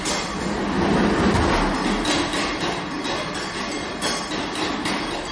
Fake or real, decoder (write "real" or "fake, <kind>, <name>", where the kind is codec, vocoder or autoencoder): real